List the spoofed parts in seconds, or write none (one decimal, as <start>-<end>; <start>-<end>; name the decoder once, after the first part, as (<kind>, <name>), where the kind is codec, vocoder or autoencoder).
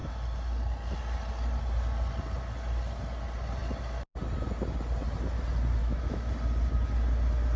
5.8-6.3 (autoencoder, DAC-VAE)